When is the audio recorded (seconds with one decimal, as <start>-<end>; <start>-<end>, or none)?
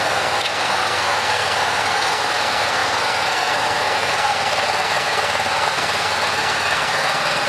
none